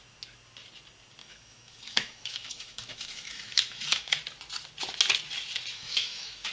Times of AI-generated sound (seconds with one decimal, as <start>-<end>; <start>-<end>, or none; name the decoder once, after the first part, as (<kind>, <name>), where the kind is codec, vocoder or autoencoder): 1.2-4.2 (autoencoder, DAC-VAE); 5.7-6.5